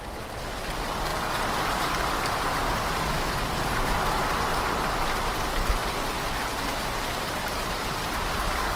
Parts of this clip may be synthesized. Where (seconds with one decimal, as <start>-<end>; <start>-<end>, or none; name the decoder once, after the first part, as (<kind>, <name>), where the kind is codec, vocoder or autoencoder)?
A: 7.4-8.8 (vocoder, BigVGAN v2)